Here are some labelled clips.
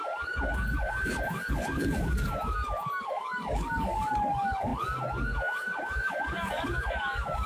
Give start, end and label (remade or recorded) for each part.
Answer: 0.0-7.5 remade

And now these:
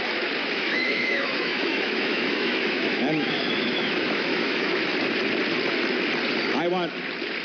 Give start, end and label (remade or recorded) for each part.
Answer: 0.0-0.4 recorded; 0.4-4.8 remade; 4.8-7.4 recorded

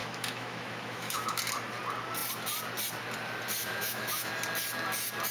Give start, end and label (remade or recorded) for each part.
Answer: 0.0-1.4 remade; 1.4-3.6 recorded; 3.6-4.3 remade; 4.3-5.3 recorded

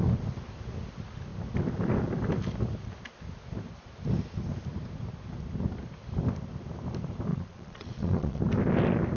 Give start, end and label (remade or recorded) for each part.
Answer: 0.0-7.3 recorded; 7.3-8.4 remade; 8.4-9.2 recorded